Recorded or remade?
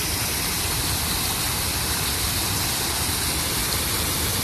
recorded